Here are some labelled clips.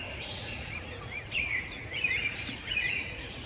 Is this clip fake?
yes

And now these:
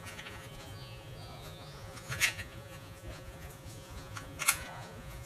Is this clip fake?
yes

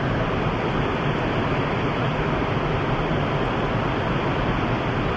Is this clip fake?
no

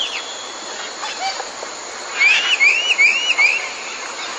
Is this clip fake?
no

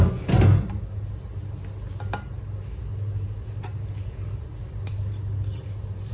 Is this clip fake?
no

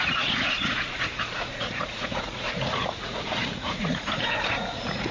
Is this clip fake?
yes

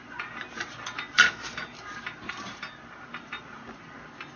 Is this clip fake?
no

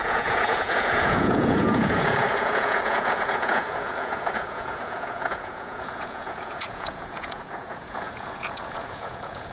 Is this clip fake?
yes